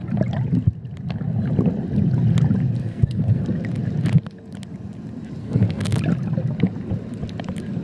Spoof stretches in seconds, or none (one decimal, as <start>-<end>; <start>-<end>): 2.8-3.4; 5.4-6.0